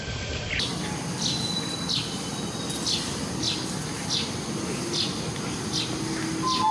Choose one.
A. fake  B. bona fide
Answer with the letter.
B